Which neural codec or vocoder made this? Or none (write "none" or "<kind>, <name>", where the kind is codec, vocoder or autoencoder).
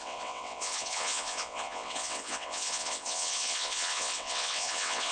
vocoder, WaveNeXt